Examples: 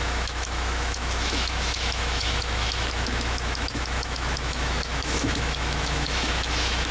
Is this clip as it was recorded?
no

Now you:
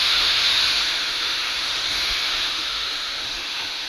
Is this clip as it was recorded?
no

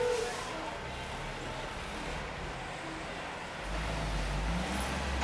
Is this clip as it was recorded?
yes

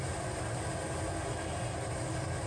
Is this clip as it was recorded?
yes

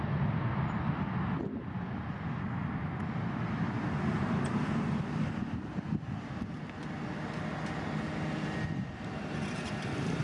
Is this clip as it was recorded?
yes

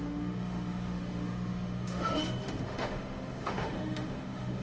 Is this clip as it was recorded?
no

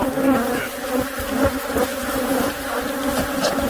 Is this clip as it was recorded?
yes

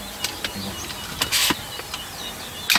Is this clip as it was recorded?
yes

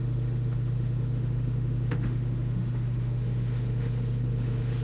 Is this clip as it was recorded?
no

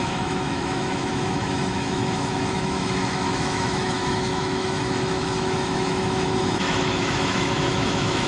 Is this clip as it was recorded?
no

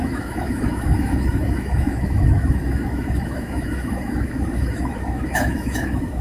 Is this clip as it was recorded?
no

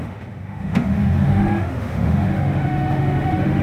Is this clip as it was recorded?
no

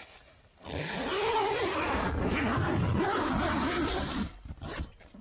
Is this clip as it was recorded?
yes